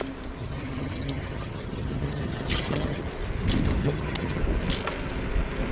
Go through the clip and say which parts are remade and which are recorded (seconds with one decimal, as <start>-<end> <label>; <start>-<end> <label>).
0.0-0.4 recorded; 0.4-3.0 remade; 3.0-3.8 recorded; 3.8-4.4 remade; 4.4-5.7 recorded